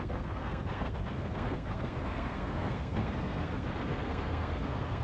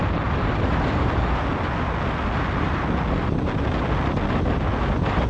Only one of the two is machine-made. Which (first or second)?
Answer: first